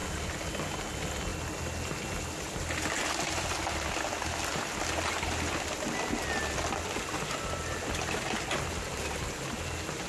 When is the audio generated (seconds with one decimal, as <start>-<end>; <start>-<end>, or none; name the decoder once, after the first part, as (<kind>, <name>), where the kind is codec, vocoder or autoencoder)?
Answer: none